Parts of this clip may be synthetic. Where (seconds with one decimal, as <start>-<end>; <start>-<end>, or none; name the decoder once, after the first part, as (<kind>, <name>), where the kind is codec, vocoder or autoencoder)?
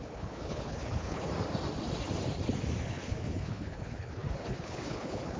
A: 0.0-1.3 (codec, HILCodec); 2.8-5.4